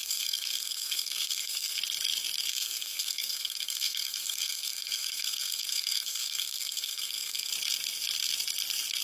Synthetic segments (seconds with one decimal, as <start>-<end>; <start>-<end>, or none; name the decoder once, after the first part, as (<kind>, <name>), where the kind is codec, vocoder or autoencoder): 0.0-1.8 (codec, SNAC); 2.5-7.5